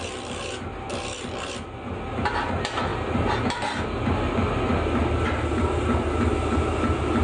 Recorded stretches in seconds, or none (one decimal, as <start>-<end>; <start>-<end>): 0.0-7.2